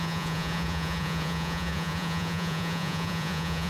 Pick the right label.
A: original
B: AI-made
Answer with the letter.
B